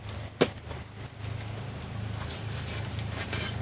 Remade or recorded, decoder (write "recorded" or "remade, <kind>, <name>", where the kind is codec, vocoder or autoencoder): recorded